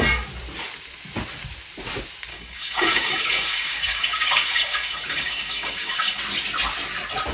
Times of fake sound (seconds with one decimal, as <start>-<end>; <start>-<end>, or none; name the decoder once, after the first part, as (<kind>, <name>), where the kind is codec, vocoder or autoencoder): 2.3-6.2 (codec, DAC)